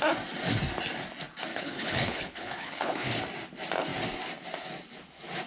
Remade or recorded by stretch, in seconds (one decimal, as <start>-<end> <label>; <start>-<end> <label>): 0.0-1.5 recorded; 1.5-3.2 remade; 3.2-5.5 recorded